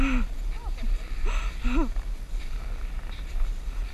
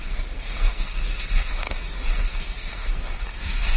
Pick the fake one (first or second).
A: second